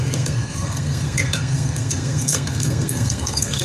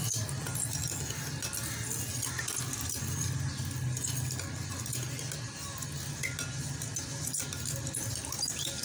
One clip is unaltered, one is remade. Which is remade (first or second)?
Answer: first